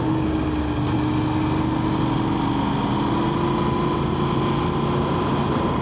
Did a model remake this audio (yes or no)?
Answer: no